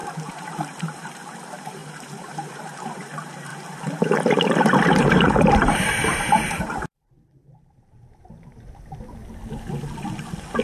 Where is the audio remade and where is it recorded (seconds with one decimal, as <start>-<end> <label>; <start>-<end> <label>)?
0.0-3.5 remade; 3.5-4.6 recorded; 4.6-9.2 remade; 9.2-10.6 recorded